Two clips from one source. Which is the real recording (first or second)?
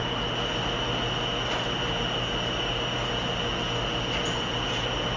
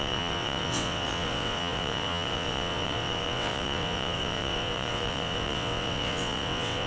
first